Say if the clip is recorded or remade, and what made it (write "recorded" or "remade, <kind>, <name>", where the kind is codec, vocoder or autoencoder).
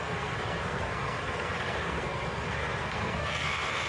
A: remade, codec, SNAC